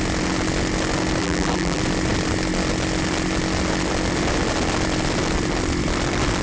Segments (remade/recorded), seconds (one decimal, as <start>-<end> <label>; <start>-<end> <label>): 0.0-1.2 recorded; 1.2-1.8 remade; 1.8-6.4 recorded